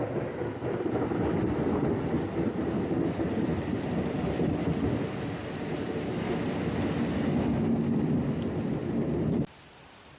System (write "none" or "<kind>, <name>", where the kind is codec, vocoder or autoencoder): none